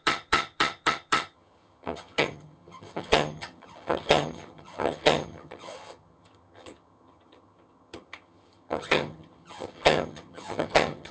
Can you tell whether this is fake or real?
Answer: fake